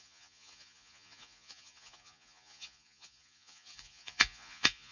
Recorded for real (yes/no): no